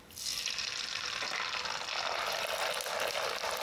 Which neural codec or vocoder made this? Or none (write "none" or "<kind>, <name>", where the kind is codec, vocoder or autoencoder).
none